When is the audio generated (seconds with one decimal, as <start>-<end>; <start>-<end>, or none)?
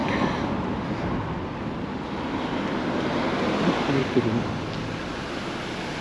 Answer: 4.0-4.5